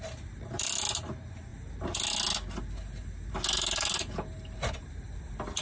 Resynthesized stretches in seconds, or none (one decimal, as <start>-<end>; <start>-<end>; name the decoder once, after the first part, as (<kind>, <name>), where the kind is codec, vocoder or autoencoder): none